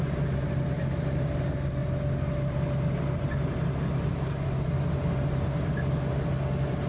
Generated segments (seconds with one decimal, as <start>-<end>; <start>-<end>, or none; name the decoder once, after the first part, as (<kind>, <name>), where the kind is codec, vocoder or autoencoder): none

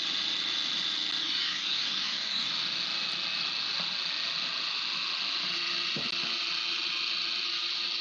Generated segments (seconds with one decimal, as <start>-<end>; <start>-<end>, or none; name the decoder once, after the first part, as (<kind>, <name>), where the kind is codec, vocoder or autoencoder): 1.2-2.5 (codec, DAC)

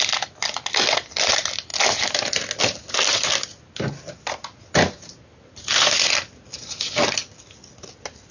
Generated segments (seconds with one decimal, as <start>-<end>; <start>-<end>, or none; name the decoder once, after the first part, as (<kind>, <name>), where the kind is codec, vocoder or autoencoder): none

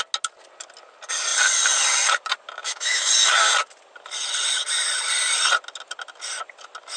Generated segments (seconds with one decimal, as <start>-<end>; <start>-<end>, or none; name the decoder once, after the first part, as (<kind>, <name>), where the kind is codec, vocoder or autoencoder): 2.6-3.1 (autoencoder, DAC-VAE)

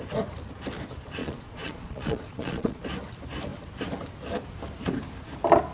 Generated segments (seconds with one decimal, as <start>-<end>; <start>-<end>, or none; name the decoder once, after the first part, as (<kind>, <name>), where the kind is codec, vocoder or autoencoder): 1.2-2.8 (vocoder, Vocos)